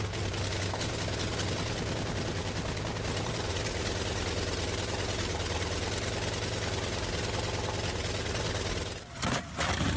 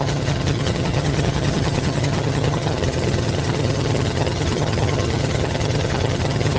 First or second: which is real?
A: first